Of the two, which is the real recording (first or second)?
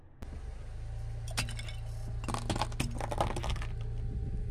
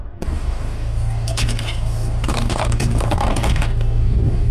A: first